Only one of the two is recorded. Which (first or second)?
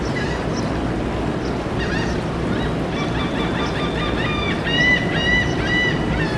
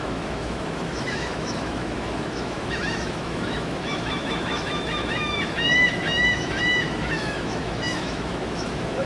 first